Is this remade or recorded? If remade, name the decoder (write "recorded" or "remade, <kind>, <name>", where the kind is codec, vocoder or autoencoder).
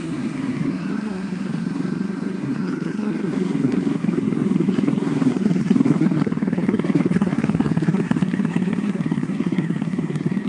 remade, codec, SNAC